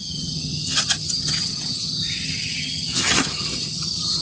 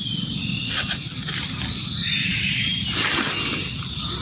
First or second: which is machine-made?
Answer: first